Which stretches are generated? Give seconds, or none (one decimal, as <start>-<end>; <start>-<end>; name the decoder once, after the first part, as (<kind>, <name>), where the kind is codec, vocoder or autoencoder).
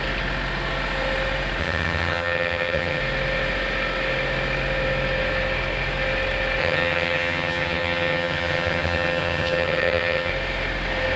1.6-3.0 (vocoder, HiFi-GAN); 6.6-10.3